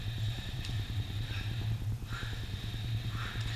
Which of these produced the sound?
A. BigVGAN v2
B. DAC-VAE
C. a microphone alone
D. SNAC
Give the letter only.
A